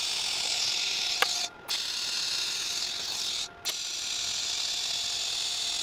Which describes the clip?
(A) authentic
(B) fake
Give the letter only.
A